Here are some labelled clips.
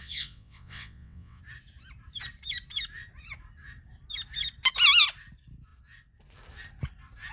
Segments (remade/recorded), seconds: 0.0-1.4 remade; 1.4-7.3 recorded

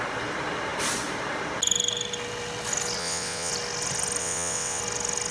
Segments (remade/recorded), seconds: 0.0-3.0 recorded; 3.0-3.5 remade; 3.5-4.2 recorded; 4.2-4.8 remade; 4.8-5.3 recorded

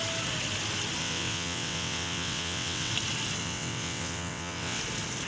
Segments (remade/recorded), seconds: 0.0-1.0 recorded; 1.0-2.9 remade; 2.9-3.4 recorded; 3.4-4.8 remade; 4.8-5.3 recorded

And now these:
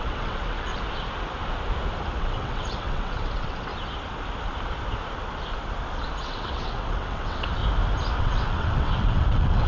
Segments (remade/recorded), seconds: 0.0-0.7 remade; 0.7-2.2 recorded; 2.2-3.7 remade; 3.7-6.2 recorded; 6.2-7.6 remade; 7.6-8.2 recorded; 8.2-9.7 remade

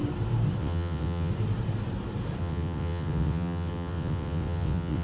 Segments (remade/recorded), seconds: 0.0-0.6 recorded; 0.6-1.3 remade; 1.3-2.4 recorded; 2.4-5.0 remade